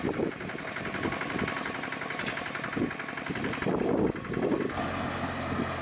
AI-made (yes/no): no